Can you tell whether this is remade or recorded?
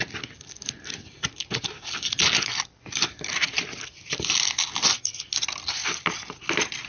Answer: recorded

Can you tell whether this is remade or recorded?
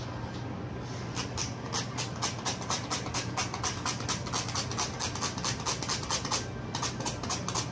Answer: recorded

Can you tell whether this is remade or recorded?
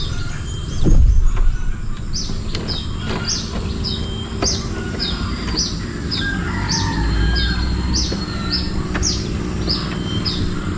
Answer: recorded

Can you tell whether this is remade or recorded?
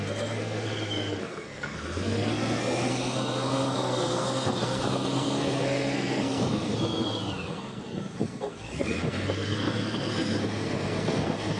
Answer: remade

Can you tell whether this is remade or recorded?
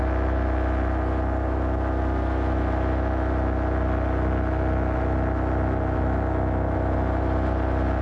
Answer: recorded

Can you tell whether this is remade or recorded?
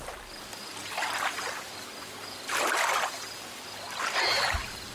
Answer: recorded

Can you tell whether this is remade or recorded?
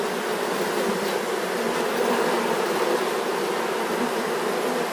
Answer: recorded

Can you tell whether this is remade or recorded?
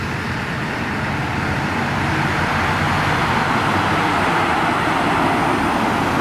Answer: recorded